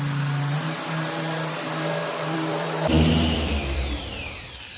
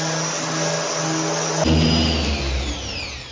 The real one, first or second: second